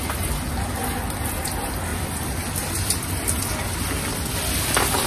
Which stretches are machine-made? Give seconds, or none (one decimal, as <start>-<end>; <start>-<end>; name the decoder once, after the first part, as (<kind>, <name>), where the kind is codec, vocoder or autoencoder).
1.9-3.5 (vocoder, BigVGAN v2)